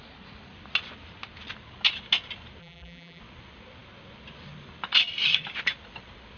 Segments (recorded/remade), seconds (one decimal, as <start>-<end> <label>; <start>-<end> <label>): 0.0-2.6 recorded; 2.6-3.2 remade; 3.2-6.4 recorded